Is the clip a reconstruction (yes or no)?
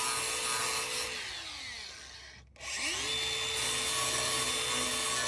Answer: no